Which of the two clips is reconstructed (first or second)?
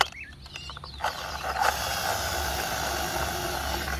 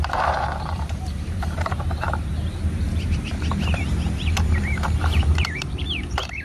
second